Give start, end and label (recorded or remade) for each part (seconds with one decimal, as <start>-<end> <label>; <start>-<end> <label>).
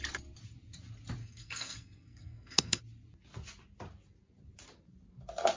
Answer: 0.0-1.2 recorded; 1.2-2.8 remade; 2.8-5.6 recorded